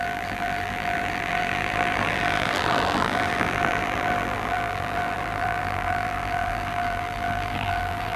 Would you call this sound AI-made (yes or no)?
yes